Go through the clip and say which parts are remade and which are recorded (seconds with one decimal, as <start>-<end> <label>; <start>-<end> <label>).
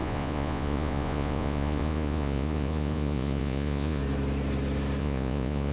0.0-4.0 remade; 4.0-5.0 recorded; 5.0-5.7 remade